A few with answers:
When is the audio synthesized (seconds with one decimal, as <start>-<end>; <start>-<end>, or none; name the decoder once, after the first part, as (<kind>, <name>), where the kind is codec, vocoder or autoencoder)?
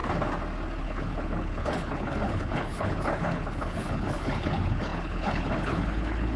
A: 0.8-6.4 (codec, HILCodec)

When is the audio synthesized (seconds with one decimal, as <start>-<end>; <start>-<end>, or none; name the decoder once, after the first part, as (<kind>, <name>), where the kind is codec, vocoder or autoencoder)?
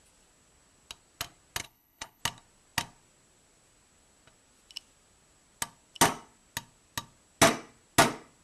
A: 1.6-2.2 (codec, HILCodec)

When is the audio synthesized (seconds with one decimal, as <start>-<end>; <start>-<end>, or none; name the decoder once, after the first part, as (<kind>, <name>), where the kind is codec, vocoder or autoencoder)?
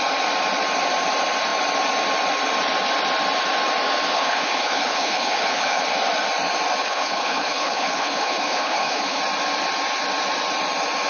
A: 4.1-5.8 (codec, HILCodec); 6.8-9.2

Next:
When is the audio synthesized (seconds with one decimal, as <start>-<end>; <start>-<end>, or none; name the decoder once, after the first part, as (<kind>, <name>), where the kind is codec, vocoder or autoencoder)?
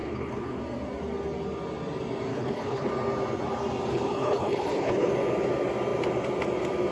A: 0.0-0.6 (codec, HILCodec); 2.3-2.9; 3.9-5.1